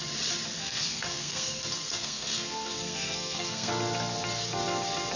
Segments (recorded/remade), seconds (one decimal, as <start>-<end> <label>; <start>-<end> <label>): 0.0-0.6 recorded; 0.6-3.7 remade; 3.7-5.2 recorded